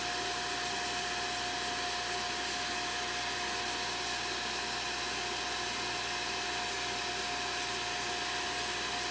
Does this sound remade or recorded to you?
recorded